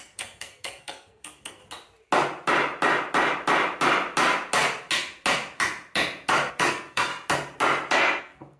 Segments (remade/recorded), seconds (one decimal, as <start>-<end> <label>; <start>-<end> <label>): 0.0-1.6 remade; 1.6-6.5 recorded; 6.5-7.1 remade; 7.1-8.2 recorded; 8.2-8.6 remade